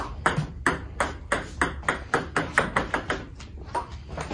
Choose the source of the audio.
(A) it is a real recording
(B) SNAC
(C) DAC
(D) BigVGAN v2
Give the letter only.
A